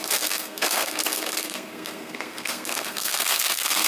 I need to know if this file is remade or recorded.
remade